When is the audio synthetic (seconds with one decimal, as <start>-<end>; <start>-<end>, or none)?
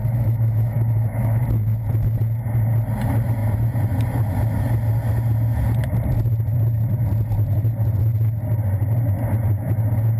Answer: 0.0-1.4